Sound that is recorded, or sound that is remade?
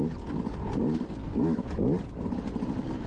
recorded